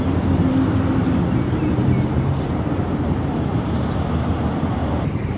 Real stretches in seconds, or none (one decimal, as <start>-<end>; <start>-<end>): 0.0-1.8; 4.1-4.8